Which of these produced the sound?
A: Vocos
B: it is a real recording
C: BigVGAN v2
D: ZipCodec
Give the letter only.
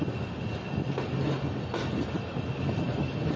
B